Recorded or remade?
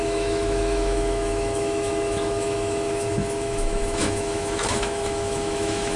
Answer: remade